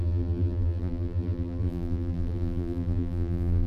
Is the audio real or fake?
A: fake